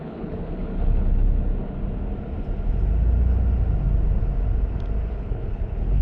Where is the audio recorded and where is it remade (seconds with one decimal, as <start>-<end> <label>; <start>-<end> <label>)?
0.0-1.5 remade; 1.5-5.1 recorded; 5.1-6.0 remade